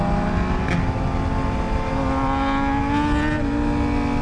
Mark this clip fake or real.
real